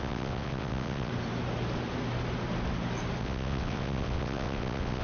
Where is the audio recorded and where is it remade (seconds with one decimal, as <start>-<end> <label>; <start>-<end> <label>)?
0.0-1.1 remade; 1.1-3.2 recorded; 3.2-5.0 remade